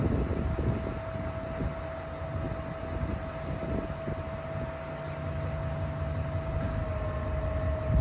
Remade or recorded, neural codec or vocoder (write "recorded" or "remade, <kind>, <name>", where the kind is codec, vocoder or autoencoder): recorded